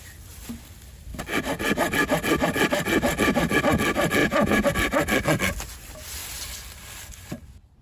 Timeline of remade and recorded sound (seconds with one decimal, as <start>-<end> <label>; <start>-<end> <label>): 0.0-4.2 recorded; 4.2-4.7 remade; 4.7-7.8 recorded